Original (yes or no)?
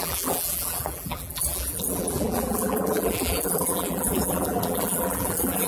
no